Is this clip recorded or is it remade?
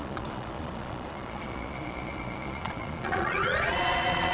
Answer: remade